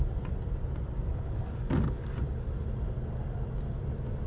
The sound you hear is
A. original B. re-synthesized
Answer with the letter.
A